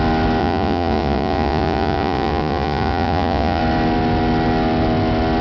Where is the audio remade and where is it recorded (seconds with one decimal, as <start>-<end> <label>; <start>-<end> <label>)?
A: 0.0-0.4 recorded; 0.4-3.6 remade; 3.6-5.4 recorded